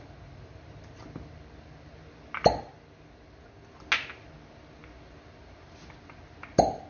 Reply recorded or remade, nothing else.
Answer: recorded